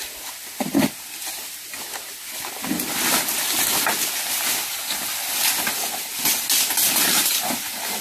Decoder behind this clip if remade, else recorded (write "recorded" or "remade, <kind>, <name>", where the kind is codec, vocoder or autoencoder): recorded